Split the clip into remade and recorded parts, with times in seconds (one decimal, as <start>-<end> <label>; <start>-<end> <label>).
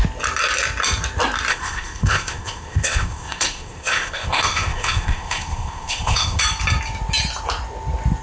0.0-1.5 recorded; 1.5-6.4 remade; 6.4-8.2 recorded